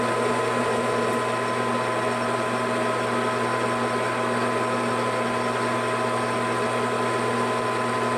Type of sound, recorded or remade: recorded